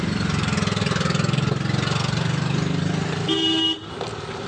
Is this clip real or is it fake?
real